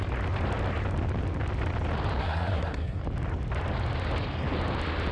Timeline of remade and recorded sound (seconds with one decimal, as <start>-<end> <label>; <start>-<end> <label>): 0.0-2.2 recorded; 2.2-3.0 remade; 3.0-5.1 recorded